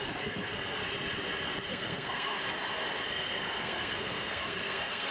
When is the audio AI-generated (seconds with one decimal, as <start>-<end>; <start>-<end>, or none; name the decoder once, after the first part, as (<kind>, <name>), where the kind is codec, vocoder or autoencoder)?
0.0-0.8 (codec, SNAC); 1.7-2.3; 3.1-5.1